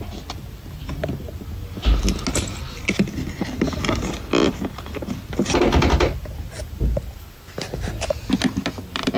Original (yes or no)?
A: yes